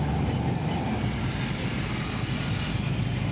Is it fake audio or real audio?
real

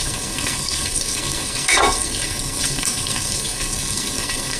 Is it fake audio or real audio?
fake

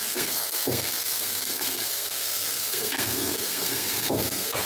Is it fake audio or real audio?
fake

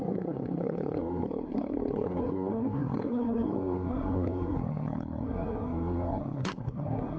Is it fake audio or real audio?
fake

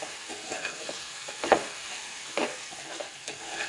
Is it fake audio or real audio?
fake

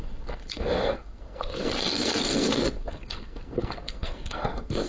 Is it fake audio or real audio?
fake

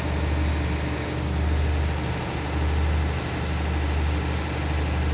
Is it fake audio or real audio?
real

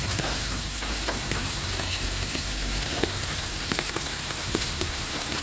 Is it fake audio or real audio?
fake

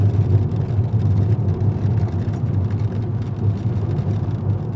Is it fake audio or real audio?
real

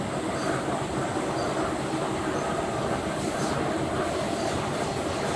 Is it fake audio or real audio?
real